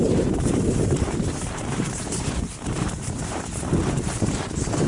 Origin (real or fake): fake